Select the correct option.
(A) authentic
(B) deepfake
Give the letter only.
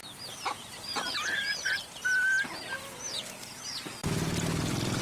B